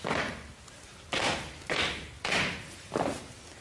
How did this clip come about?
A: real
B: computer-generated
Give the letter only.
A